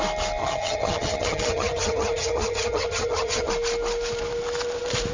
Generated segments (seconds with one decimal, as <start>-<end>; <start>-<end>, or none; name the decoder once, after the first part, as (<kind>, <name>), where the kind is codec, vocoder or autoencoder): 0.4-3.5 (vocoder, HiFi-GAN)